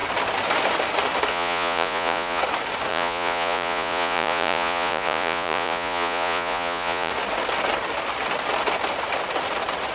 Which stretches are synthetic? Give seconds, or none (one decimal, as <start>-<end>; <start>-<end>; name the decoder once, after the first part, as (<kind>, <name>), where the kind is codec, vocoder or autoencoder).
1.3-2.4 (vocoder, Vocos); 2.9-7.1